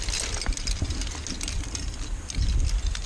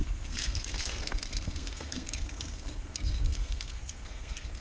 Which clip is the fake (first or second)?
second